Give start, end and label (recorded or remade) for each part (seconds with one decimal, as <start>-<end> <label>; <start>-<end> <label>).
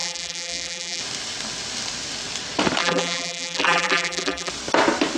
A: 0.0-1.0 remade; 1.0-2.8 recorded; 2.8-4.5 remade; 4.5-5.2 recorded